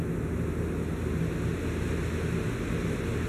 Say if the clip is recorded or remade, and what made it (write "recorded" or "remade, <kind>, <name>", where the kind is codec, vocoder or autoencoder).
recorded